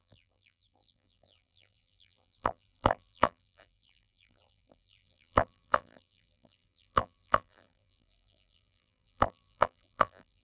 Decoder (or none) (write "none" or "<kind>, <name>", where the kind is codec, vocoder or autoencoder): vocoder, BigVGAN v2